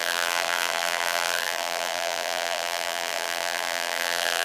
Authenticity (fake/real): fake